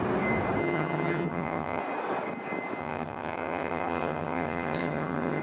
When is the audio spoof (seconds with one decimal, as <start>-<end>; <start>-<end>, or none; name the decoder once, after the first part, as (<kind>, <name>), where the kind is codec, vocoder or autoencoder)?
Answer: 0.6-1.8 (vocoder, HiFi-GAN); 2.8-5.4